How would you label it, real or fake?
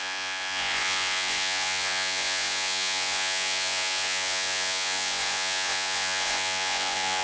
fake